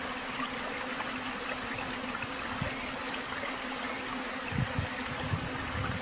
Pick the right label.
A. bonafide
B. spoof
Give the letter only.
A